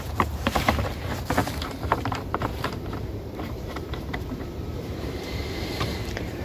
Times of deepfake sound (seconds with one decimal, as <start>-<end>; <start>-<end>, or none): 0.0-6.4